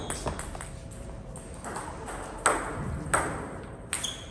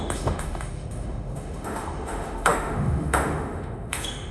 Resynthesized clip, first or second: second